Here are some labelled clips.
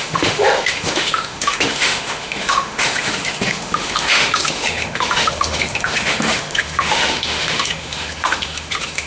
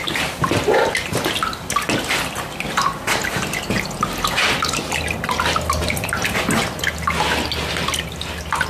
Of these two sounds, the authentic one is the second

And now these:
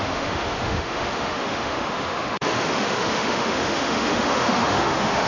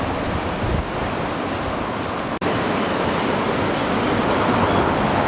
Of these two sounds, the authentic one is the second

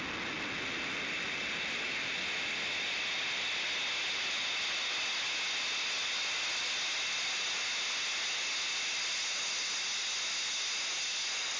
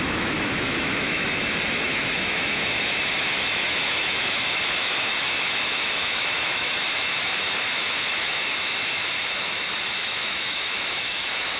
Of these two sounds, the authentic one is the first